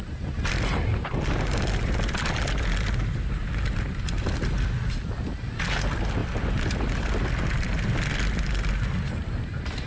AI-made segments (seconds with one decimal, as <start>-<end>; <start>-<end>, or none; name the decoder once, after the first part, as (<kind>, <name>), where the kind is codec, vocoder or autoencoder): none